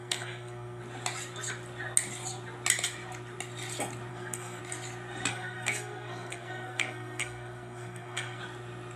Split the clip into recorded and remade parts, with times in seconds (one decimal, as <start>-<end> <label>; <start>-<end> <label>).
0.0-0.8 remade; 0.8-4.1 recorded; 4.1-4.6 remade; 4.6-5.3 recorded; 5.3-8.4 remade; 8.4-9.0 recorded